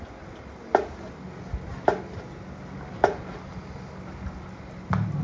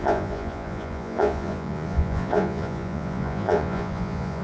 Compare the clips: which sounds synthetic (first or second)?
second